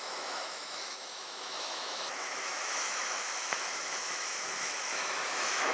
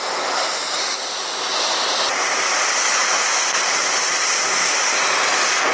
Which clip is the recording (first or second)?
second